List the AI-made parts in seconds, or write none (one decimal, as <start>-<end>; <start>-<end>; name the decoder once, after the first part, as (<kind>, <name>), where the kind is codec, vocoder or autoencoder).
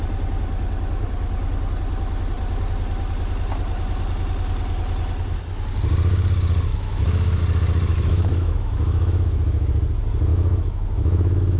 6.7-7.4 (autoencoder, DAC-VAE); 7.9-9.7; 10.3-11.6